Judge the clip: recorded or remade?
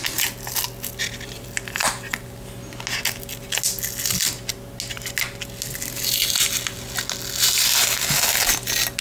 recorded